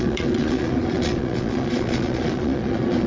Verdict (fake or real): fake